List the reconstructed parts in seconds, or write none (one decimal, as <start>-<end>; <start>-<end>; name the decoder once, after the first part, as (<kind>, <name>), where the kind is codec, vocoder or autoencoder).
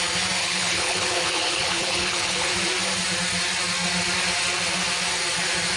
0.4-2.5 (codec, HILCodec)